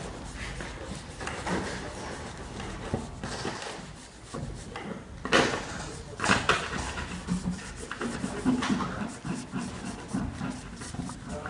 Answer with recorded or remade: recorded